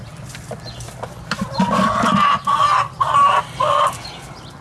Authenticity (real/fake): real